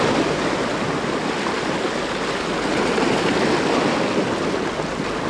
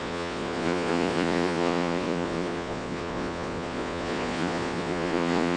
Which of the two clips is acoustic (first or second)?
first